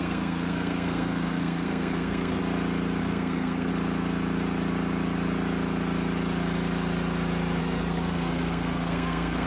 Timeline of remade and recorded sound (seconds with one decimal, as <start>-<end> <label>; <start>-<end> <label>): 0.0-2.4 remade; 2.4-3.0 recorded; 3.0-3.7 remade; 3.7-7.6 recorded; 7.6-9.5 remade